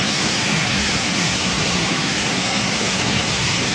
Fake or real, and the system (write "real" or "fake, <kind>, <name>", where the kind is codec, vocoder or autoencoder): fake, codec, SNAC